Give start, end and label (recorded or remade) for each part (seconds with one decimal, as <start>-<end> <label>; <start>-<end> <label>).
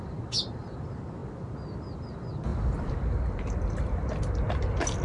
0.0-2.5 recorded; 2.5-3.1 remade; 3.1-5.0 recorded